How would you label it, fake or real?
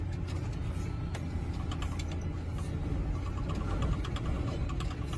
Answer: real